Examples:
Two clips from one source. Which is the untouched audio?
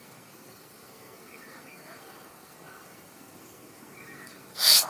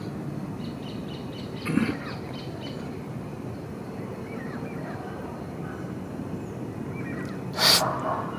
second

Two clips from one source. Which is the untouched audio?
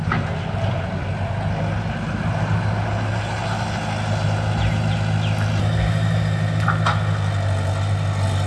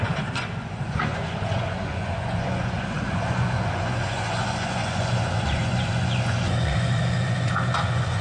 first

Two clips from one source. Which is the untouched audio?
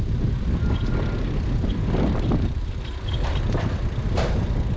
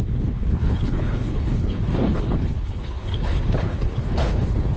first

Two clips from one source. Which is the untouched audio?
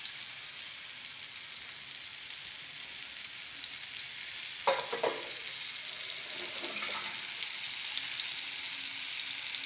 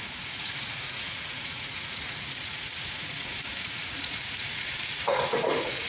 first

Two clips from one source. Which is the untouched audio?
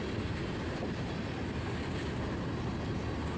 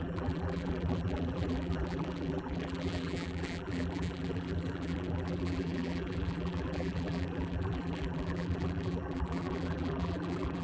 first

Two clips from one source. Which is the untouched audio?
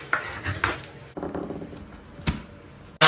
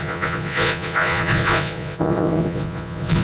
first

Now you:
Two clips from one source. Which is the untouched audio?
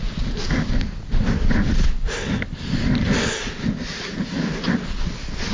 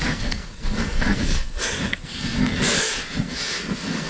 first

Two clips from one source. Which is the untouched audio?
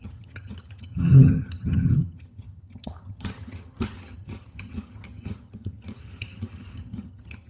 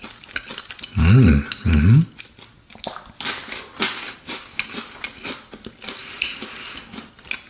second